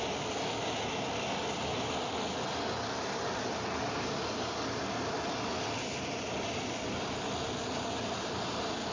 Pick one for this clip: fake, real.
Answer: real